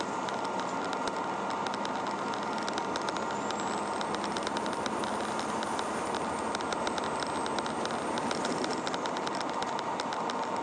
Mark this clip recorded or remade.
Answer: recorded